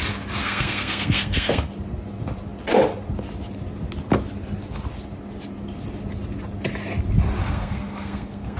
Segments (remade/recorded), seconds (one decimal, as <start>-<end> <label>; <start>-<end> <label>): 0.0-0.4 recorded; 0.4-1.7 remade; 1.7-7.4 recorded; 7.4-8.6 remade

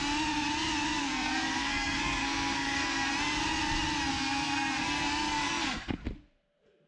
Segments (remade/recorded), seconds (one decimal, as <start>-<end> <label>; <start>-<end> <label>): 0.0-1.0 recorded; 1.0-3.1 remade; 3.1-4.1 recorded; 4.1-6.0 remade; 6.0-6.9 recorded

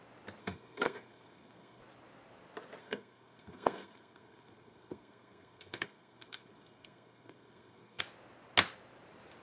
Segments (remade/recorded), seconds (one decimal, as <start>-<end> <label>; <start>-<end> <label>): 0.0-0.4 recorded; 0.4-1.8 remade; 1.8-2.8 recorded; 2.8-8.0 remade; 8.0-9.4 recorded

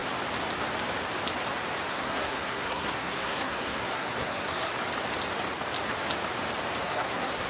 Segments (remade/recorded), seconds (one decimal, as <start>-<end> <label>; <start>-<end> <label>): 0.0-1.9 recorded; 1.9-4.7 remade; 4.7-6.8 recorded; 6.8-7.5 remade

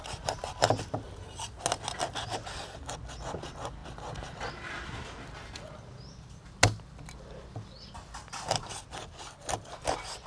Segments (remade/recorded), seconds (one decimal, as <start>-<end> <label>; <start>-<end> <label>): 0.0-10.3 recorded

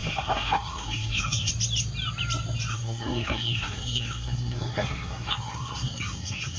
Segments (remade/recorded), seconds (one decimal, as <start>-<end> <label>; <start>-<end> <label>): 0.0-1.5 remade; 1.5-2.7 recorded; 2.7-6.6 remade

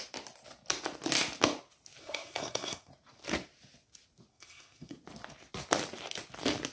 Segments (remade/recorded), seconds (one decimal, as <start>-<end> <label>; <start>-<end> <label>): 0.0-2.0 recorded; 2.0-2.9 remade; 2.9-4.3 recorded; 4.3-5.0 remade; 5.0-6.7 recorded